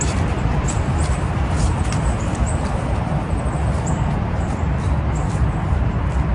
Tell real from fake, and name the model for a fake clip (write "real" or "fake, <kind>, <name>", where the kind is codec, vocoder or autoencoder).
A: fake, vocoder, BigVGAN v2